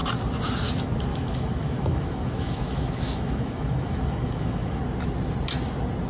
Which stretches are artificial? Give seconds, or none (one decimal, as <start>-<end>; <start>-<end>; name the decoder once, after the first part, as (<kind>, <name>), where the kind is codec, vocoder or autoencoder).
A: 1.1-4.8 (autoencoder, DAC-VAE)